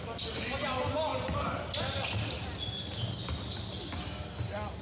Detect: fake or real real